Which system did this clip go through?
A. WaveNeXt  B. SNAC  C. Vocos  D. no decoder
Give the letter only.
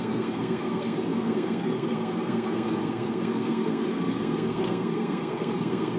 B